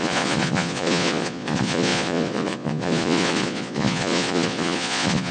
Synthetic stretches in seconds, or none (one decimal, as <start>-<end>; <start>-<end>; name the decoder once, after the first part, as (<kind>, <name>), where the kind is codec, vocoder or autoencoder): 0.0-5.3 (vocoder, Vocos)